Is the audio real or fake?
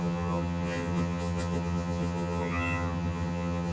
fake